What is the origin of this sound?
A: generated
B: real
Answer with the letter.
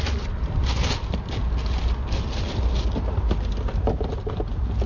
B